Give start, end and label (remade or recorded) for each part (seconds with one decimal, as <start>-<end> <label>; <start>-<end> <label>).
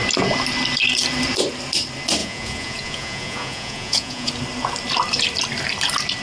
0.0-2.2 recorded; 2.2-4.3 remade; 4.3-6.2 recorded